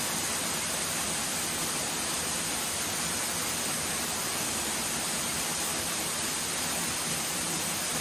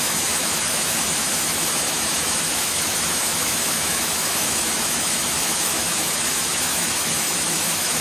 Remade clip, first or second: second